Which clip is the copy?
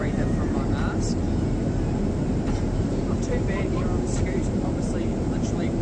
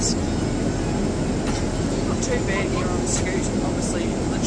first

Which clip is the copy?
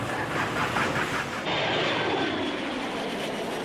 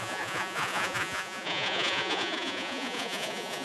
second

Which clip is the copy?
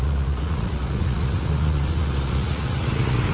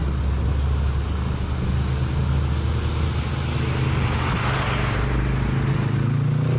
first